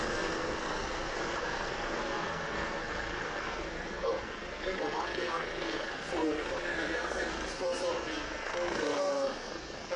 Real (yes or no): no